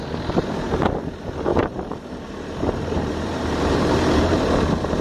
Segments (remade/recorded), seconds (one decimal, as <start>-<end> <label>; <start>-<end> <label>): 0.0-1.5 recorded; 1.5-4.5 remade; 4.5-5.0 recorded